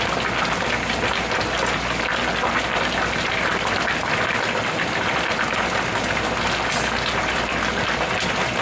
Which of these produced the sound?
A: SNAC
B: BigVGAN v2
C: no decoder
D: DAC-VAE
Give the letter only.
C